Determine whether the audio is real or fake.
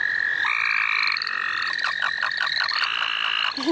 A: real